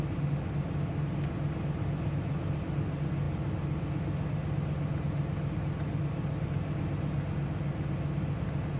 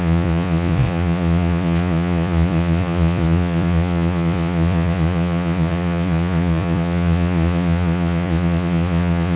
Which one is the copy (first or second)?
second